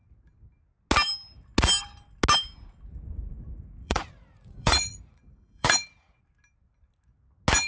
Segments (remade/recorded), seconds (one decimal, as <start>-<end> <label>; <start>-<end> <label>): 0.0-3.8 recorded; 3.8-6.2 remade; 6.2-7.7 recorded